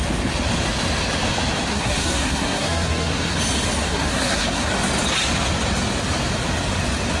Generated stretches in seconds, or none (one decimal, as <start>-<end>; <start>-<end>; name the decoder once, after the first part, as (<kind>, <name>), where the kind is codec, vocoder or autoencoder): 1.7-3.4 (codec, SNAC); 3.8-4.7